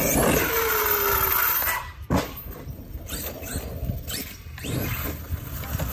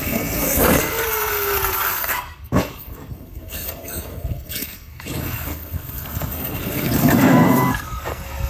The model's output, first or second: second